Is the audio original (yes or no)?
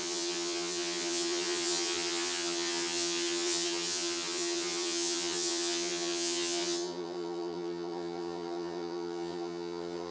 no